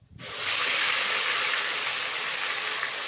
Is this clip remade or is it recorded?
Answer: recorded